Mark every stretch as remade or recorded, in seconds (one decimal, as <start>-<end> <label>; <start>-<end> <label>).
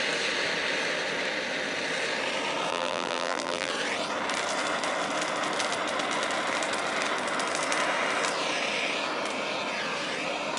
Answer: 0.0-2.7 recorded; 2.7-3.7 remade; 3.7-10.6 recorded